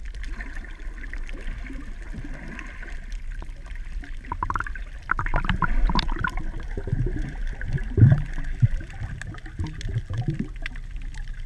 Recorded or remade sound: recorded